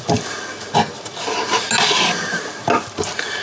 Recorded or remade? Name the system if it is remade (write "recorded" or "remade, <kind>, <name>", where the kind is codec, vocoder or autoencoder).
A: recorded